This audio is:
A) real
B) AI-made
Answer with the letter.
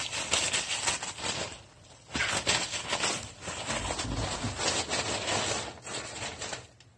A